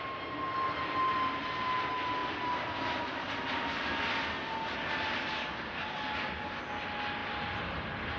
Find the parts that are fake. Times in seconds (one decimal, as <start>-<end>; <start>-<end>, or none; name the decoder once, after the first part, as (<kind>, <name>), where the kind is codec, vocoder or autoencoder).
5.4-6.6 (codec, DAC)

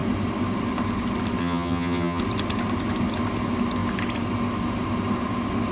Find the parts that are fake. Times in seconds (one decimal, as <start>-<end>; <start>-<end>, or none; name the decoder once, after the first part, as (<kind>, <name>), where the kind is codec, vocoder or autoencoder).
1.4-2.2 (vocoder, HiFi-GAN)

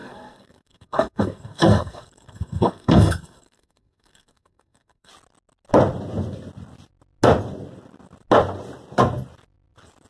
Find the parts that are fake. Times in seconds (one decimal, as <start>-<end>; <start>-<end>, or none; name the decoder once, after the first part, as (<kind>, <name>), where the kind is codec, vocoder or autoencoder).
0.0-5.1 (codec, SNAC)

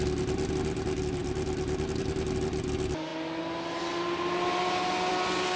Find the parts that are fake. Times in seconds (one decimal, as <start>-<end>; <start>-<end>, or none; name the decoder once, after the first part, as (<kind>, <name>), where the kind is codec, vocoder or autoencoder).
none

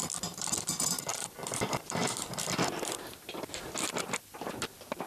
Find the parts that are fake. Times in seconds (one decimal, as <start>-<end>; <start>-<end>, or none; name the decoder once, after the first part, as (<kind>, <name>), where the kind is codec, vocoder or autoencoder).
1.1-4.2 (vocoder, BigVGAN v2)

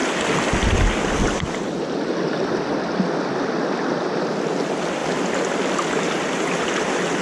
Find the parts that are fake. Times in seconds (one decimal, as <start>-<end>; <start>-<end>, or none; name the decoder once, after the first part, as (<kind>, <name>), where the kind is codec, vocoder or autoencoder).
none

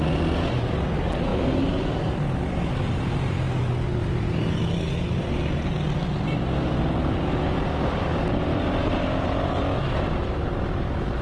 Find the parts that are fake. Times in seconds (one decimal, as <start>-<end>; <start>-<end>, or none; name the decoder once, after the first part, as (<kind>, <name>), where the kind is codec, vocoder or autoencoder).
none

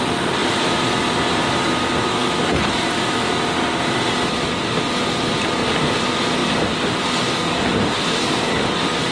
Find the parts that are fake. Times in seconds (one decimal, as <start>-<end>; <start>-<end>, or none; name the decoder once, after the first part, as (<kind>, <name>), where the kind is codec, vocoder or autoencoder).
none